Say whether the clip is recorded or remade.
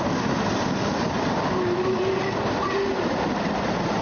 recorded